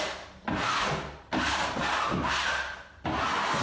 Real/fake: real